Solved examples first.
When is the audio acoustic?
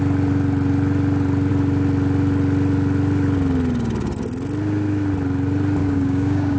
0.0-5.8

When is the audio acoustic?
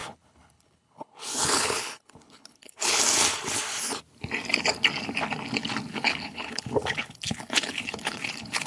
3.0-5.9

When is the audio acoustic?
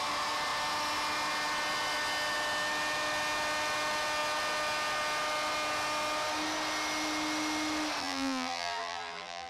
0.0-8.0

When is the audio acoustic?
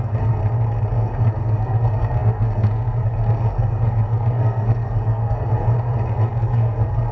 0.4-0.9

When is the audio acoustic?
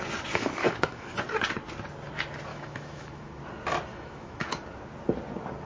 0.0-0.6; 1.2-2.5; 3.4-3.9; 4.6-5.7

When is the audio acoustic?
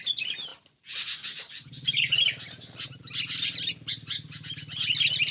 0.0-5.3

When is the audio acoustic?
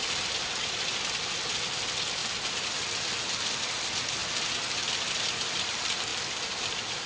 0.0-7.1